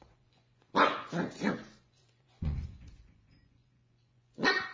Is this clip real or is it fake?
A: fake